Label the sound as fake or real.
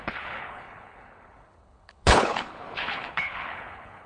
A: fake